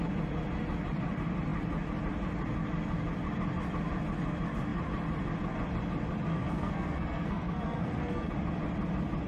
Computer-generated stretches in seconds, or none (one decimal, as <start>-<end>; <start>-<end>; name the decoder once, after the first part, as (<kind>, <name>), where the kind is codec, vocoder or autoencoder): 6.3-8.3 (codec, SNAC)